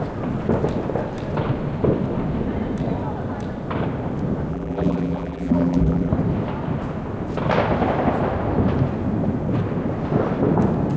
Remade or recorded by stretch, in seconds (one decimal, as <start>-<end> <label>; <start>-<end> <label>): 0.0-4.5 recorded; 4.5-6.1 remade; 6.1-11.0 recorded